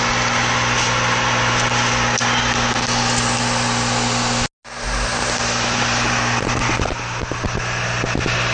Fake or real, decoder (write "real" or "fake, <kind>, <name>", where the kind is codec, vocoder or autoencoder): real